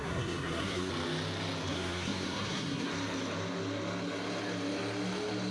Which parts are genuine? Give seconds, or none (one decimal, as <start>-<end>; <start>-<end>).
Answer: 0.9-1.7; 2.9-5.5